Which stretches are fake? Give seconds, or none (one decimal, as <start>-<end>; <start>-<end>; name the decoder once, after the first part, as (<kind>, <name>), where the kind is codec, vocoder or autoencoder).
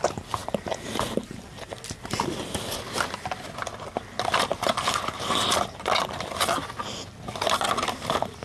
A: none